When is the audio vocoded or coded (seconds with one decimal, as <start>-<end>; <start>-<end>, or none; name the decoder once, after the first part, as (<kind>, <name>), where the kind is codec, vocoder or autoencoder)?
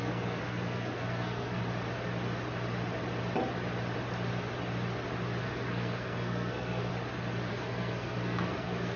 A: 0.0-1.6 (codec, SNAC); 5.4-6.9; 7.5-9.0